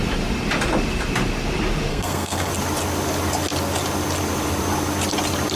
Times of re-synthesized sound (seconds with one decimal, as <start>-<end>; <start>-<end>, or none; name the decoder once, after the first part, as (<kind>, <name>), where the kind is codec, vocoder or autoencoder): 1.9-2.5 (codec, SNAC)